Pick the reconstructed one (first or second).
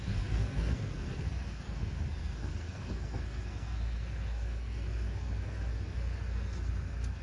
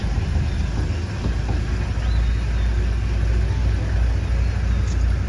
first